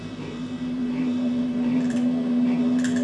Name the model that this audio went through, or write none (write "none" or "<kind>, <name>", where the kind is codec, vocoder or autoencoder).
vocoder, BigVGAN v2